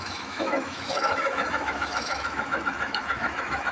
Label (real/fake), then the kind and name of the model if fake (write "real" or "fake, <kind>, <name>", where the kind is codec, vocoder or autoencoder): fake, autoencoder, DAC-VAE